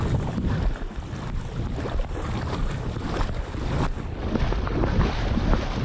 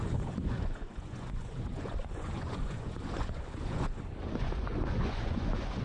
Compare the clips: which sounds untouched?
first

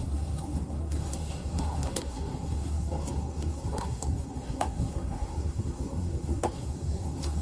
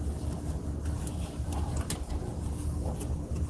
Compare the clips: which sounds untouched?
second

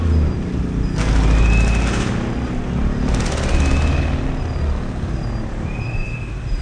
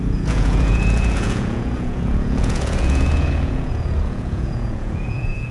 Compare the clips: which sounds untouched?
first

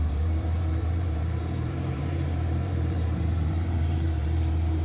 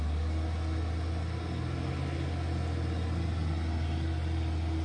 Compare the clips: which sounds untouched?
second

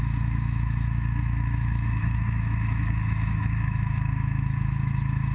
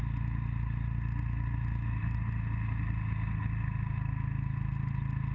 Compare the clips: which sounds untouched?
second